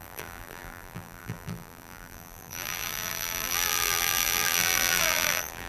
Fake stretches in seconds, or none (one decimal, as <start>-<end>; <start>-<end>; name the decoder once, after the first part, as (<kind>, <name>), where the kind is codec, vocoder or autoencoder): 0.0-5.7 (vocoder, BigVGAN v2)